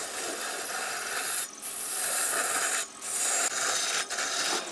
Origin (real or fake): real